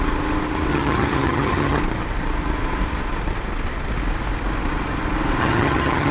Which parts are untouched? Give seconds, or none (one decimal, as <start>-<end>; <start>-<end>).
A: 0.0-0.7; 1.8-5.4